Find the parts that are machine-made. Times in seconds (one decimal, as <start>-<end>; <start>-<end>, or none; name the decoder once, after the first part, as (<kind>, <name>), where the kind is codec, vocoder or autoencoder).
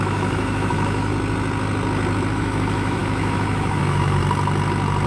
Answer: 0.0-1.1 (autoencoder, DAC-VAE); 2.3-4.2